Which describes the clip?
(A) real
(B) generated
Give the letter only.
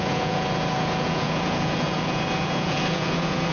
B